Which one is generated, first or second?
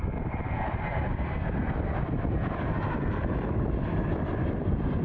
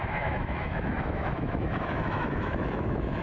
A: second